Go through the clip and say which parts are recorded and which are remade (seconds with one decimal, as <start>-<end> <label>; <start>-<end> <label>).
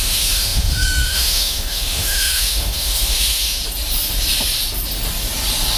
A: 0.0-3.6 remade; 3.6-5.8 recorded